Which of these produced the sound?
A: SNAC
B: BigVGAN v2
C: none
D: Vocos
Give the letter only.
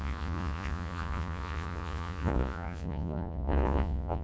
D